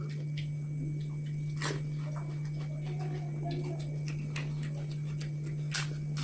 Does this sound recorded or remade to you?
recorded